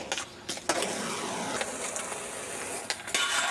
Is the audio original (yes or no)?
yes